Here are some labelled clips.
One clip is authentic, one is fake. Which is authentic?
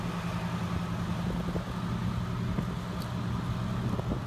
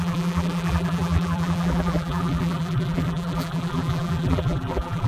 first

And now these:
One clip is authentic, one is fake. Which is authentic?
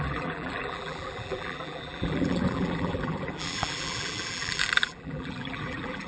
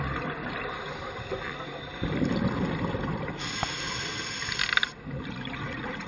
second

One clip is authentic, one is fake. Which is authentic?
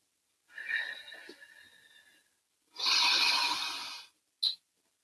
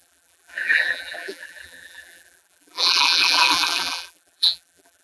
first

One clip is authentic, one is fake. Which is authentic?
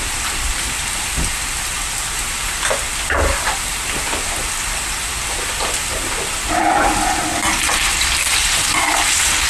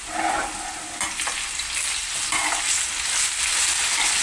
second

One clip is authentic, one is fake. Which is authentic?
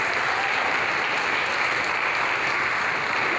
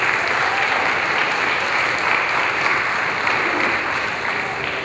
first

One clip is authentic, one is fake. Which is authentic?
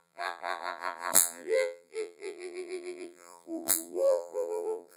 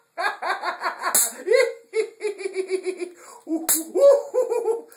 second